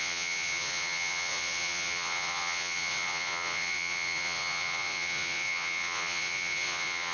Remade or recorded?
remade